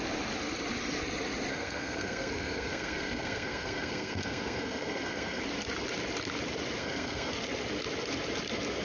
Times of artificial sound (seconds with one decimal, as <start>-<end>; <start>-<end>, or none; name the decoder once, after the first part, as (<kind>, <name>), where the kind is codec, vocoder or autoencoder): 1.5-5.4 (codec, SNAC); 6.8-7.3